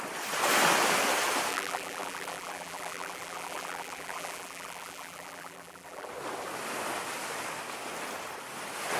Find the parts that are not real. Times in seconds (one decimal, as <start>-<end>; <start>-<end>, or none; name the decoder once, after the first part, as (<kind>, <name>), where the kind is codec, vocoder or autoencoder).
1.5-6.1 (vocoder, BigVGAN v2)